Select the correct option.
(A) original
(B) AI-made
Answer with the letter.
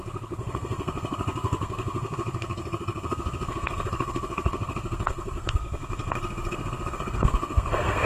B